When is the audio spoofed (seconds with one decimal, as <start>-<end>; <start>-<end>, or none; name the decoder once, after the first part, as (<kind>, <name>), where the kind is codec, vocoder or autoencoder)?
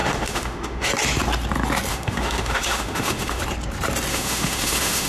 0.0-0.9 (autoencoder, DAC-VAE); 1.9-3.4; 4.1-5.1